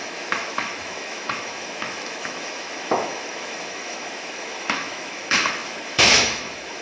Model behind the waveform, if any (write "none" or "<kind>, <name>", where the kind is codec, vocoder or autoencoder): autoencoder, DAC-VAE